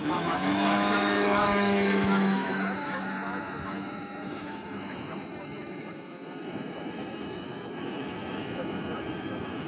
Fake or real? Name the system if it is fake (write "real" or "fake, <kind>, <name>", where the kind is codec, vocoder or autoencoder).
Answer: fake, autoencoder, DAC-VAE